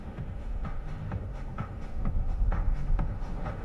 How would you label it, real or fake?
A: fake